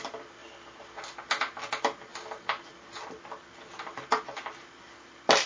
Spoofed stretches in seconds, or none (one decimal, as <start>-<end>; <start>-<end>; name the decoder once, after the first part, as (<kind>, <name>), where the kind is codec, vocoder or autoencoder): none